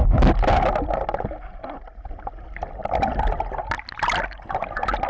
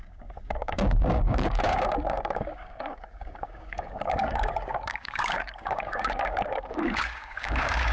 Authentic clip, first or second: first